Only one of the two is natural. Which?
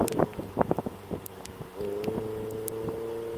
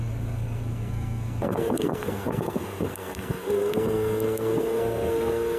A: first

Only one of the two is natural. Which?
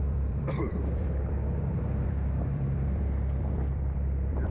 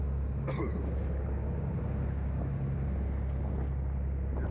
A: second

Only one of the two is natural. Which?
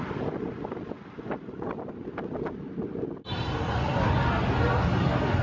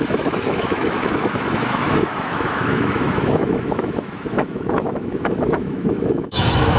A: first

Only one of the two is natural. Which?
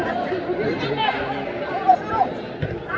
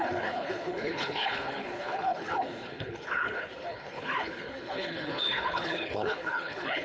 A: first